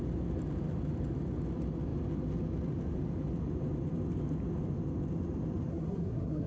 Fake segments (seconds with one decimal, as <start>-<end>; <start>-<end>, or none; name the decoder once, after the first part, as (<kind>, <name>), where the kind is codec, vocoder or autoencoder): 5.7-6.5 (codec, SNAC)